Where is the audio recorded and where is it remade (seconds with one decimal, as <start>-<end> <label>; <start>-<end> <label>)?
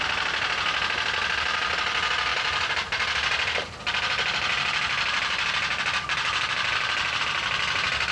0.0-2.3 recorded; 2.3-7.2 remade; 7.2-8.1 recorded